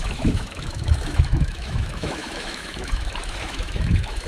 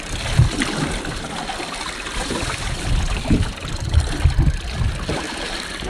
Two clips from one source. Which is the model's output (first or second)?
first